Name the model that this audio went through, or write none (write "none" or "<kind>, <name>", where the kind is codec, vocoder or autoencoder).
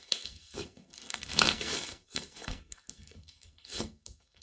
codec, SNAC